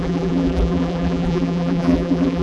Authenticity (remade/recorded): remade